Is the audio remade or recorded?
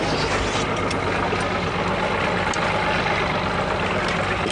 recorded